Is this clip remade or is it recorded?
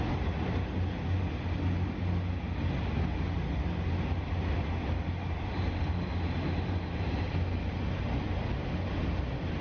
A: recorded